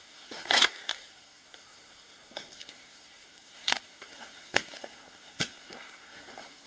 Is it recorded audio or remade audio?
remade